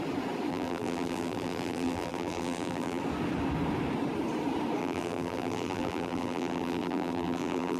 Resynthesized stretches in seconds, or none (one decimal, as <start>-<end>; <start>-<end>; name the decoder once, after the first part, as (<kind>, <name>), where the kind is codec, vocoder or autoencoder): 0.5-3.0 (vocoder, BigVGAN v2); 4.8-7.8